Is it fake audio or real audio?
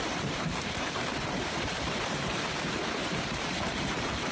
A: fake